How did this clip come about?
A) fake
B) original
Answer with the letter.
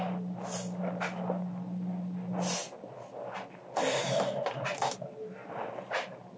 B